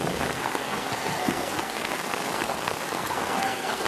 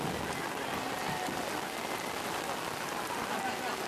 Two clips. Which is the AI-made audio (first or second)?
first